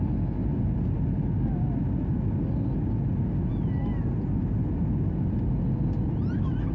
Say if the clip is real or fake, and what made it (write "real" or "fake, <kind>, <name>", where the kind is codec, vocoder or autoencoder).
real